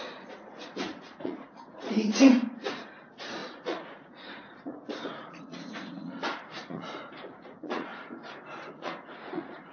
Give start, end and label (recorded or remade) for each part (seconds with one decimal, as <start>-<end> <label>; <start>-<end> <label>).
0.0-7.9 remade; 7.9-8.7 recorded; 8.7-9.7 remade